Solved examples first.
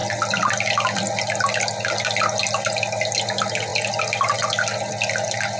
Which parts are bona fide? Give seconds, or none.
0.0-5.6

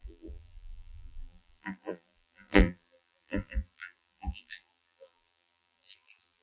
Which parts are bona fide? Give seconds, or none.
none

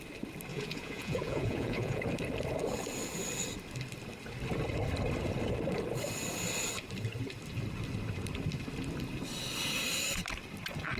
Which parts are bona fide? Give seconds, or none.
0.0-0.5; 2.0-11.0